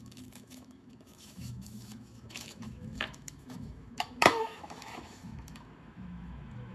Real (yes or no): no